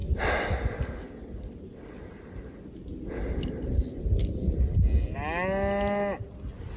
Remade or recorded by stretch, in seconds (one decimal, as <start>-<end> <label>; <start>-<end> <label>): 0.0-6.8 recorded